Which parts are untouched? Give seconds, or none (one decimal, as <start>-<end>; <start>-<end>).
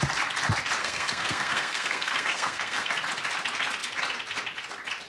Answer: 0.0-0.8; 2.9-5.1